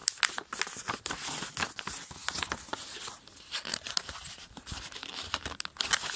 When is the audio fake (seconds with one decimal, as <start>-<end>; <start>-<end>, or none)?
none